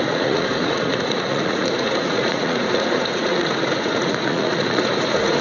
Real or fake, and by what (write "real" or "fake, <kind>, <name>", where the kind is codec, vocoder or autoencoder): fake, vocoder, Vocos